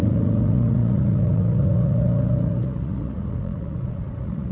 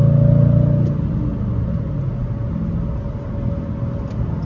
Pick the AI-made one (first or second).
first